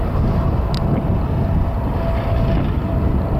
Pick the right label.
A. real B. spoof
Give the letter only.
A